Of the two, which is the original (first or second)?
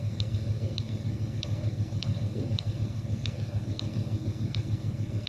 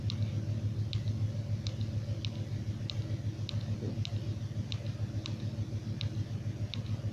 second